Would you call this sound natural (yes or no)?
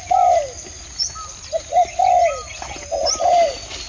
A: yes